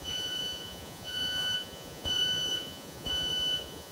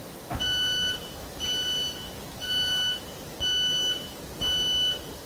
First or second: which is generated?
first